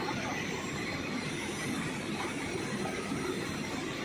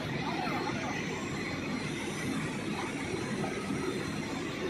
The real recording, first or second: second